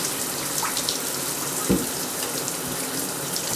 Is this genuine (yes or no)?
no